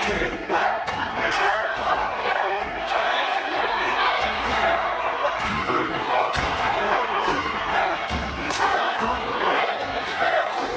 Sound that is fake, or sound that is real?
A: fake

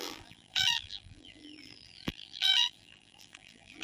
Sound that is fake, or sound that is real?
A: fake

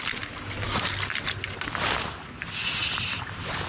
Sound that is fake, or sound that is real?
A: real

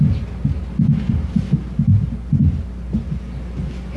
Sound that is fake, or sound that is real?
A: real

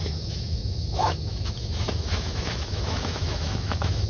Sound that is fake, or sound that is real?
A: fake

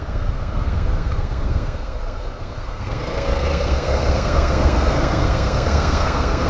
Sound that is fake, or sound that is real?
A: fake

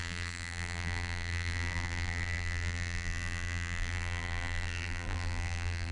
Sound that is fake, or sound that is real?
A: fake